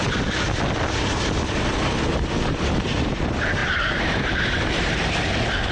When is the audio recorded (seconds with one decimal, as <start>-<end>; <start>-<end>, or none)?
0.0-3.6; 5.3-5.7